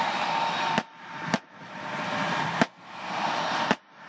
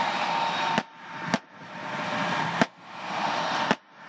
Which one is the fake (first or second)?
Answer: first